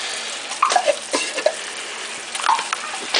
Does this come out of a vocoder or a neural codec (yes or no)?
no